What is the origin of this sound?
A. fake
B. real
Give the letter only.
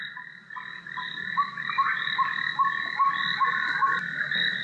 B